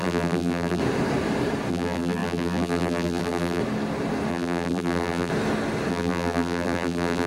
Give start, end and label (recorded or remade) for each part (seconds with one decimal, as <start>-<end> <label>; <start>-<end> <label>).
0.0-0.8 remade; 0.8-1.7 recorded; 1.7-3.6 remade; 3.6-4.3 recorded; 4.3-5.3 remade; 5.3-5.9 recorded; 5.9-7.3 remade